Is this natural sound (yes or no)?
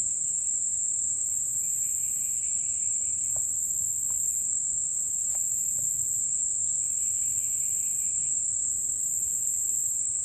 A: yes